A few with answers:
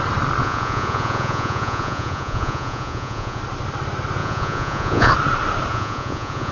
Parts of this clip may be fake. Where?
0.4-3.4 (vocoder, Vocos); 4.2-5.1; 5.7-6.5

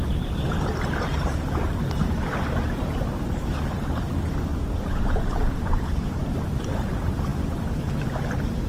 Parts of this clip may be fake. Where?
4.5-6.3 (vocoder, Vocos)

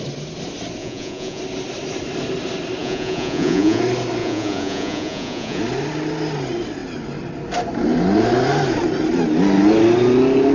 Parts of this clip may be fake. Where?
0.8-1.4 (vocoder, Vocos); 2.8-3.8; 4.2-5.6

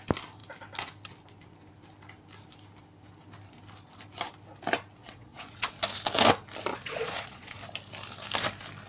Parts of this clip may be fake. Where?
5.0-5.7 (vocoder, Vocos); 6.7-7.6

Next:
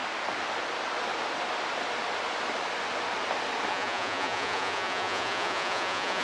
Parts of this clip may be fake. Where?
3.7-6.2 (vocoder, Vocos)

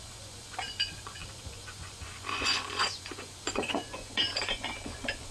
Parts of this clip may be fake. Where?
0.0-5.3 (vocoder, Vocos)

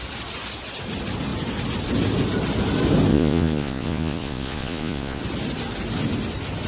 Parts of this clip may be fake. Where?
3.1-5.2 (vocoder, Vocos)

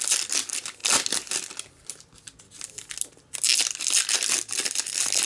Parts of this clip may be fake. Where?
none